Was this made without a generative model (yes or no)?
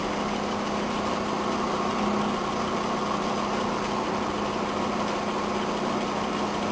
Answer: yes